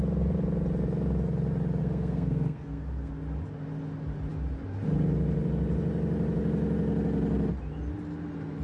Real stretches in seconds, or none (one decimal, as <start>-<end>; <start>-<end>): 0.0-1.8; 3.1-8.6